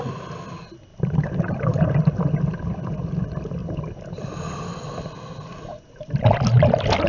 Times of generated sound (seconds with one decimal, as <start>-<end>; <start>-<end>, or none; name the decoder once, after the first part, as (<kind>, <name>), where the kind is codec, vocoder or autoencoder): 0.9-1.9 (vocoder, BigVGAN v2)